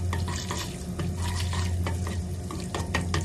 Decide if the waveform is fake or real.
real